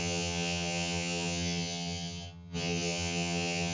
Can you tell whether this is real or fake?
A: fake